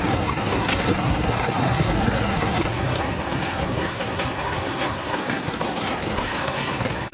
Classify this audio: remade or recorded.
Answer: remade